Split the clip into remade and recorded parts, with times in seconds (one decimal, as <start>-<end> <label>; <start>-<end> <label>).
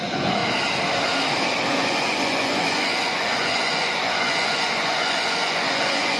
0.0-0.4 remade; 0.4-1.7 recorded; 1.7-6.2 remade